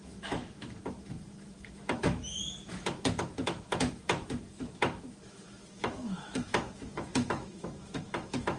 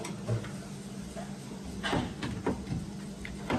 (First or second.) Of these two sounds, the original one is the second